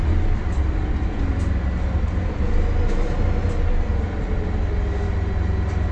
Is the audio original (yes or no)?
yes